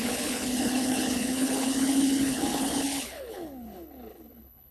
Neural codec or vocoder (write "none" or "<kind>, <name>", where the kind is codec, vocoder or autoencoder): codec, HILCodec